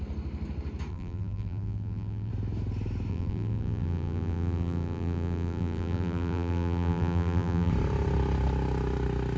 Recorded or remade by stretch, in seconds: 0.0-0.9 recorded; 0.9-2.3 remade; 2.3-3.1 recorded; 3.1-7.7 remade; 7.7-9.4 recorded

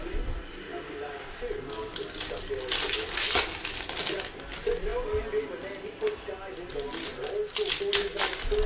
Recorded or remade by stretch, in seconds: 0.0-8.7 recorded

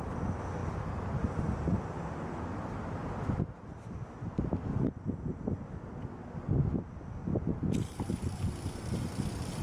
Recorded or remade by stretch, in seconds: 0.0-9.6 recorded

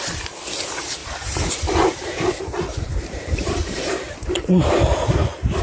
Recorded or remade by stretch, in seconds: 0.0-1.0 recorded; 1.0-2.4 remade; 2.4-2.9 recorded; 2.9-5.6 remade

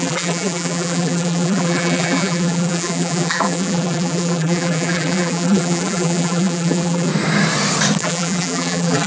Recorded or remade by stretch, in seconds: 0.0-7.1 remade; 7.1-8.0 recorded; 8.0-9.1 remade

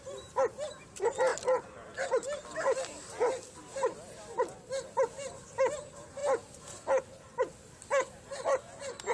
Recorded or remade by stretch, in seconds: 0.0-9.1 recorded